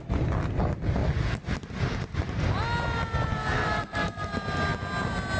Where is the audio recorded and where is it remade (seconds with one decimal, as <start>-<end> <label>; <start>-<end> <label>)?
0.0-3.4 recorded; 3.4-4.3 remade; 4.3-5.4 recorded